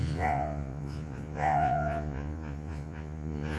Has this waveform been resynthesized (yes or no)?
yes